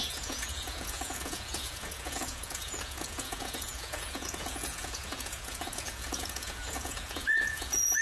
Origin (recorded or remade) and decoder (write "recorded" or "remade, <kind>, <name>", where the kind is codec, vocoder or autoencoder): remade, vocoder, Vocos